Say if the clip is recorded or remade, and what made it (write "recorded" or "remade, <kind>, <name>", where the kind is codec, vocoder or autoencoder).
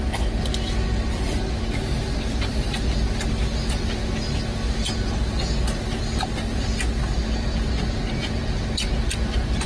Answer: recorded